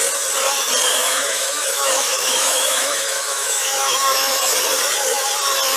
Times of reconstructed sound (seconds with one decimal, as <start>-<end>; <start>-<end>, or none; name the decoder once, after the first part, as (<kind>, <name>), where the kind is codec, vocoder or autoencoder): 1.0-4.4 (autoencoder, DAC-VAE)